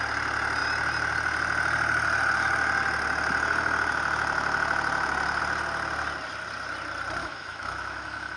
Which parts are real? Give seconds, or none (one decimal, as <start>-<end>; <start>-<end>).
0.0-7.2